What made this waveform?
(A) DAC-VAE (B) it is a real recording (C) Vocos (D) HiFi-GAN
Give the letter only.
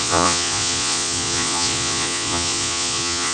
C